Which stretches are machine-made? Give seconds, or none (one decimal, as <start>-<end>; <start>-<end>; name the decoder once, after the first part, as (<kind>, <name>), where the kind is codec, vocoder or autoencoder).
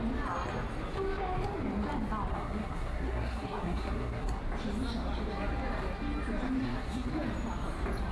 2.3-4.4 (codec, SNAC); 6.6-7.1